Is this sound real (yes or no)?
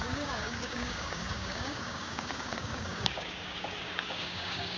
no